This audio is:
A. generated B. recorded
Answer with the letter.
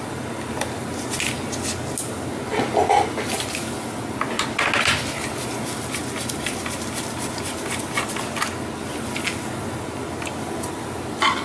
B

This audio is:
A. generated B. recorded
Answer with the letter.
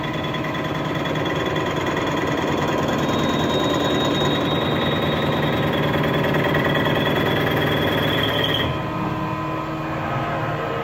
B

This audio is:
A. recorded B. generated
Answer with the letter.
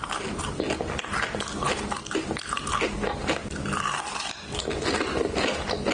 A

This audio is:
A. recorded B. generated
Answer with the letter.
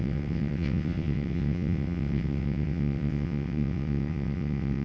B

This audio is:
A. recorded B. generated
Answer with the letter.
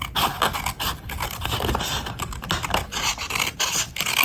A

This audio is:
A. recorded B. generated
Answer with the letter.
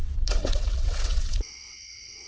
B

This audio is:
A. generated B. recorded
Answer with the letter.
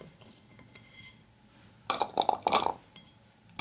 B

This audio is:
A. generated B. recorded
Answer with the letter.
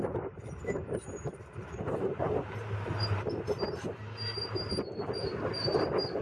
A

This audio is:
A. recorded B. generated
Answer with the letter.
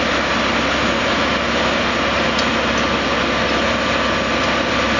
A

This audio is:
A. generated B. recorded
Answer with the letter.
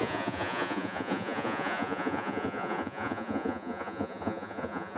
A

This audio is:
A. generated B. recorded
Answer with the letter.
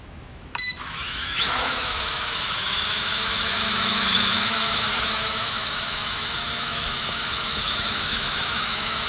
A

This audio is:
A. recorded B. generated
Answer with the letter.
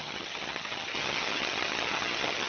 B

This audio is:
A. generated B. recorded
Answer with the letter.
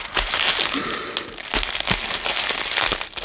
B